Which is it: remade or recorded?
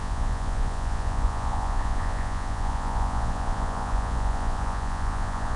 remade